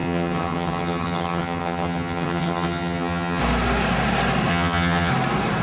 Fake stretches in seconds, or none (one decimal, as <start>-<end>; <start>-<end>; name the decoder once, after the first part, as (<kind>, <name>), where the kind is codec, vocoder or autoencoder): 0.0-3.4 (vocoder, HiFi-GAN); 4.5-5.1